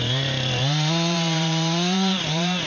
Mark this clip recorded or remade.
remade